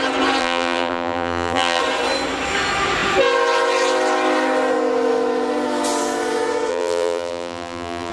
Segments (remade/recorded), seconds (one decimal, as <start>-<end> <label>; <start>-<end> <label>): 0.0-0.4 recorded; 0.4-1.8 remade; 1.8-6.7 recorded; 6.7-8.1 remade